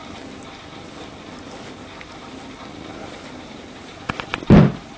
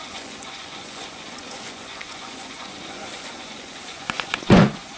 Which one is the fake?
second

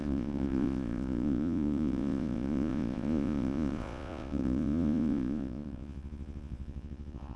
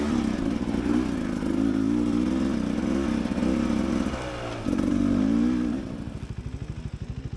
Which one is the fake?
first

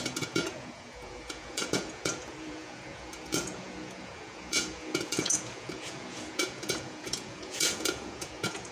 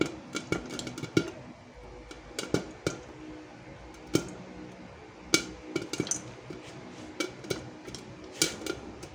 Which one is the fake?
first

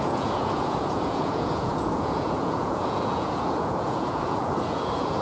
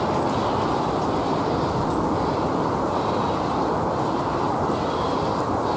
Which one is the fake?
first